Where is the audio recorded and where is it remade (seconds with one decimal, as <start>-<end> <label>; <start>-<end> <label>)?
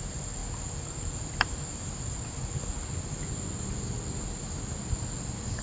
0.0-5.6 recorded